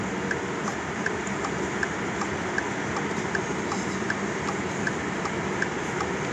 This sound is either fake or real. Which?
real